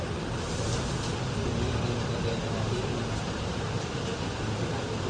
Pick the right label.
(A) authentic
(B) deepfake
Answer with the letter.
A